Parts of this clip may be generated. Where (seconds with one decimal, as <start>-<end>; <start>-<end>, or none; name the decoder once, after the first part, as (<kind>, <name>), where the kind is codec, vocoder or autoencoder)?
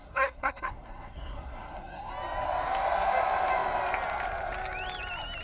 0.0-2.1 (codec, SNAC)